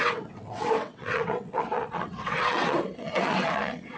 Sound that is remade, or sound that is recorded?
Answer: remade